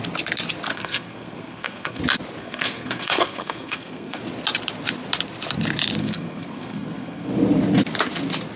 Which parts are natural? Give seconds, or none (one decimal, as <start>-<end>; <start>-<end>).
0.0-0.7; 2.0-2.4; 4.2-6.0; 7.3-8.6